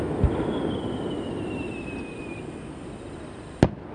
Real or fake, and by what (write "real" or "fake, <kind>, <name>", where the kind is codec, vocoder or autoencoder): real